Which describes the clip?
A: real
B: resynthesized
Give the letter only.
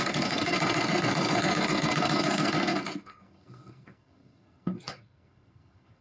B